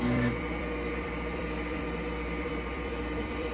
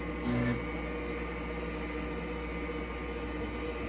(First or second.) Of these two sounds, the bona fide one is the second